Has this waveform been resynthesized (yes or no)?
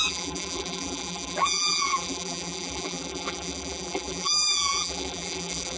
yes